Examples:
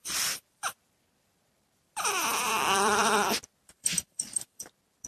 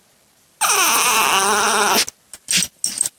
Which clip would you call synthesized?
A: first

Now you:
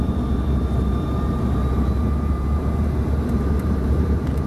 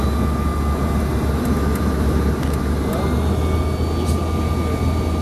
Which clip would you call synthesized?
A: first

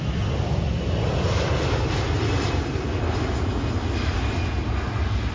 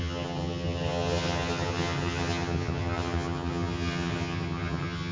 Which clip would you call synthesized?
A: second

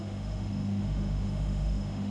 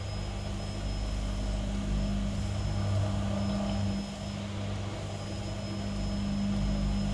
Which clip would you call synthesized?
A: first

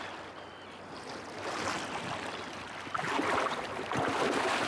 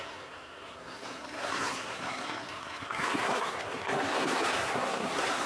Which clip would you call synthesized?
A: second